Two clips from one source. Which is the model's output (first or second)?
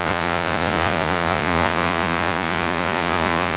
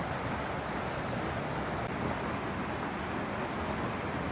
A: first